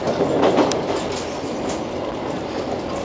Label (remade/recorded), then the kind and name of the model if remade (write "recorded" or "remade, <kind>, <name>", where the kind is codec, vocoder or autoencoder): recorded